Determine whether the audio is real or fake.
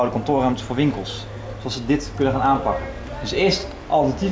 real